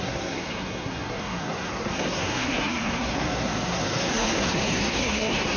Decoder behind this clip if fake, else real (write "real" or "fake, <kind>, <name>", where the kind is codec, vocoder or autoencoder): fake, codec, SNAC